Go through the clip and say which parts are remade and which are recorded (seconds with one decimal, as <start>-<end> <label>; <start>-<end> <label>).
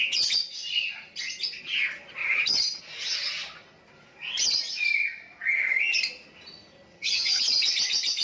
0.0-2.2 recorded; 2.2-2.8 remade; 2.8-5.5 recorded; 5.5-6.0 remade; 6.0-6.9 recorded; 6.9-7.4 remade; 7.4-8.2 recorded